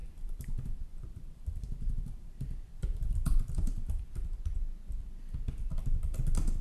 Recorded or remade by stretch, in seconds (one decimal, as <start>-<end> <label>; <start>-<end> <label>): 0.0-4.0 remade; 4.0-6.6 recorded